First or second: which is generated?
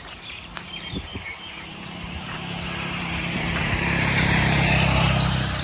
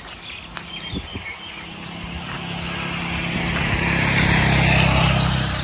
first